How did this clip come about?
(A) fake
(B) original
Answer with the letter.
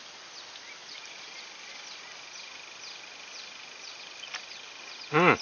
B